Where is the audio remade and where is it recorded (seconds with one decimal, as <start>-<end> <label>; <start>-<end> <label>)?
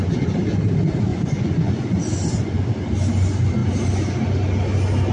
0.0-1.1 recorded; 1.1-2.0 remade; 2.0-5.1 recorded